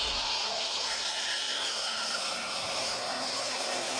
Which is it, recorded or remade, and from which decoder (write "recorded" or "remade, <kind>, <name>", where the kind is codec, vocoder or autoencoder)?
remade, codec, SNAC